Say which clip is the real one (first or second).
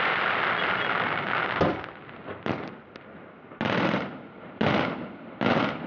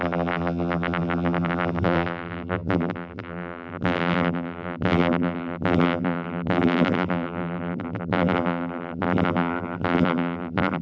first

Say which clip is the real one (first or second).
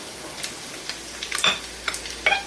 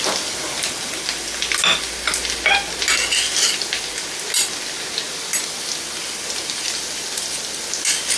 second